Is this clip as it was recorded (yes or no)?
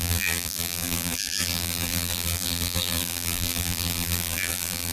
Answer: no